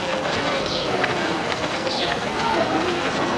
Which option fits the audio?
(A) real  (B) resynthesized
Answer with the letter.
B